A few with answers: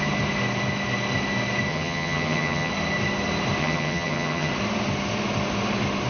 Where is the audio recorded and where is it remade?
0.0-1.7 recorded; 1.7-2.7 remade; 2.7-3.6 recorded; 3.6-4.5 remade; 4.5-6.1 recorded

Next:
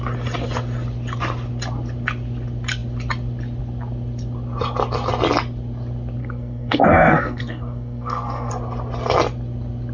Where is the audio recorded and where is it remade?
0.0-6.2 recorded; 6.2-8.5 remade; 8.5-9.9 recorded

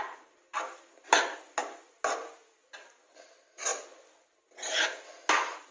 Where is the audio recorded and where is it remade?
0.0-5.7 recorded

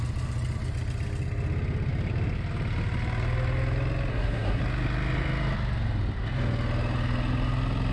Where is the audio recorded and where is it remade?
0.0-4.1 recorded; 4.1-4.6 remade; 4.6-7.9 recorded

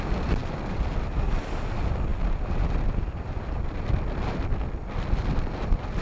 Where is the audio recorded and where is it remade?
0.0-6.0 recorded

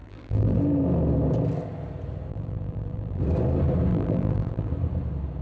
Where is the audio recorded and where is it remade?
0.0-0.6 remade; 0.6-2.3 recorded; 2.3-3.2 remade; 3.2-3.9 recorded; 3.9-4.7 remade; 4.7-5.4 recorded

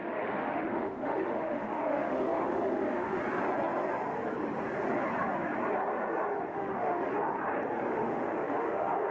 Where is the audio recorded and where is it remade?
0.0-3.2 remade; 3.2-6.5 recorded; 6.5-7.1 remade; 7.1-7.9 recorded; 7.9-9.1 remade